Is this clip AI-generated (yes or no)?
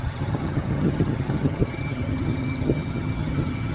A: yes